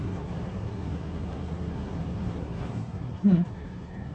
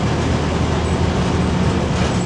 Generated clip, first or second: first